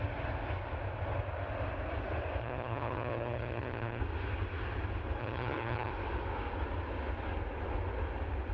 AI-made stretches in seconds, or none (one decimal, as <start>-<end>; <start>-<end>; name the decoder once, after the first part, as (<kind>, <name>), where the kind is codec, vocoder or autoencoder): 2.4-4.0 (vocoder, HiFi-GAN); 5.2-5.9